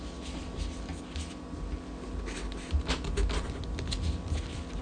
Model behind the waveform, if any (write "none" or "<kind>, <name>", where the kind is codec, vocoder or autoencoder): none